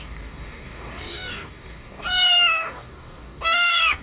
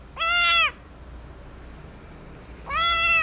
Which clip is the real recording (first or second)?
second